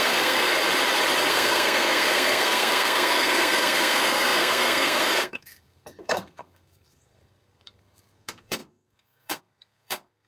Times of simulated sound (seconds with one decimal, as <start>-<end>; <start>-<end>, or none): 0.0-0.5; 1.3-10.3